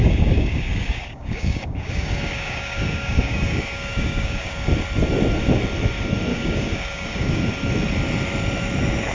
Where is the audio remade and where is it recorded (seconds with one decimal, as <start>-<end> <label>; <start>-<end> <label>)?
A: 0.0-4.7 remade; 4.7-6.3 recorded; 6.3-7.4 remade; 7.4-9.1 recorded